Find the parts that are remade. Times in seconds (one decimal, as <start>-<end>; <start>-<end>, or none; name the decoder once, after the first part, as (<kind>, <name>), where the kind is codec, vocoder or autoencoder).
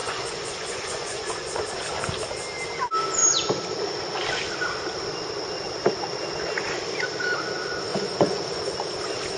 0.0-1.7 (vocoder, Vocos); 7.9-8.6